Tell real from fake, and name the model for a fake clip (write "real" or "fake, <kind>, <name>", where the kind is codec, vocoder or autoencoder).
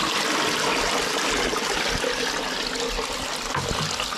real